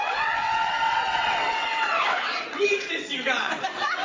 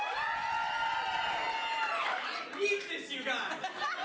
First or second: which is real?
second